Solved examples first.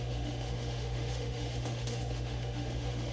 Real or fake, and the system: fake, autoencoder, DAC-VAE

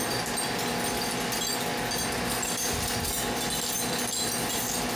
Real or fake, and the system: real